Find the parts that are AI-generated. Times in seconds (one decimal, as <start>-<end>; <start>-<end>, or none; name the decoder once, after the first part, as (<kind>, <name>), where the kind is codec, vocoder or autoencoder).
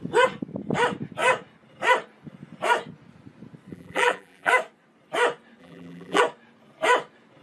3.7-4.5 (vocoder, BigVGAN v2); 5.6-6.2